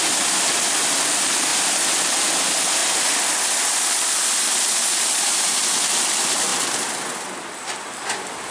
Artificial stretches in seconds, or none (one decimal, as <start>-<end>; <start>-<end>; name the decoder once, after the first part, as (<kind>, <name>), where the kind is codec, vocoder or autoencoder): 0.0-1.5 (vocoder, BigVGAN v2); 2.4-2.8; 3.7-6.5; 7.5-8.5